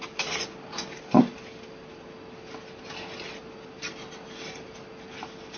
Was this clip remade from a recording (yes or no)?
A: no